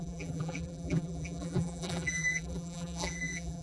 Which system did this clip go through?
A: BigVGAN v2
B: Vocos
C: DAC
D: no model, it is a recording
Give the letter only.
A